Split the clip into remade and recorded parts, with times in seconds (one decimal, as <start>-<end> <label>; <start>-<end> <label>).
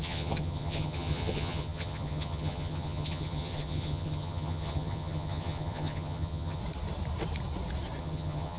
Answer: 0.0-6.6 remade; 6.6-8.0 recorded; 8.0-8.6 remade